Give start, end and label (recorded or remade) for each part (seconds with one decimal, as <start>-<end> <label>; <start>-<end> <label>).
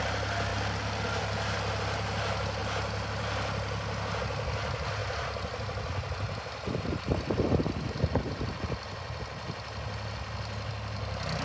0.0-11.4 recorded